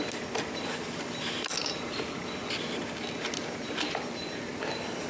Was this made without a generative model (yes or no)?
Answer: yes